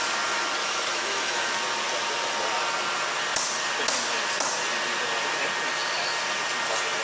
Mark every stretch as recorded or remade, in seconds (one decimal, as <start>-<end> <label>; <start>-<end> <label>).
0.0-0.6 recorded; 0.6-1.5 remade; 1.5-7.0 recorded